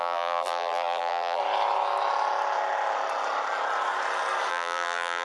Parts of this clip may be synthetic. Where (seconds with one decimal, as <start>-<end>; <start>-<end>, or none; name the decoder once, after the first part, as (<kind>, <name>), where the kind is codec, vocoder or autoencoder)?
0.0-1.4 (vocoder, BigVGAN v2); 4.5-5.2